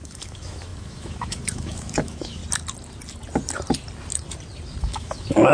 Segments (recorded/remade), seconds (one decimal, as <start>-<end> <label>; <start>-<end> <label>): 0.0-2.4 remade; 2.4-4.8 recorded; 4.8-5.5 remade